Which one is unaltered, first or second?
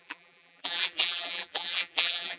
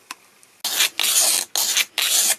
second